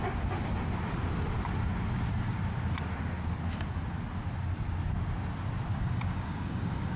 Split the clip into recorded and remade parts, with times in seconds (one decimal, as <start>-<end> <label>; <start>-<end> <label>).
0.0-5.7 recorded; 5.7-7.0 remade